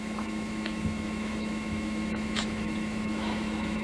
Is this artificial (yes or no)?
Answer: yes